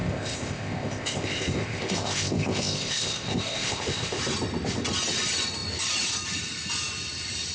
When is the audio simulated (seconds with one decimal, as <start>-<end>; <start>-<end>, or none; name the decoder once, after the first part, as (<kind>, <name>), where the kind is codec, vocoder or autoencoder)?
0.0-4.2 (codec, ZipCodec)